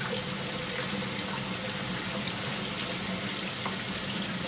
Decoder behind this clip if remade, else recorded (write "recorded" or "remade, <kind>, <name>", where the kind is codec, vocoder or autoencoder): recorded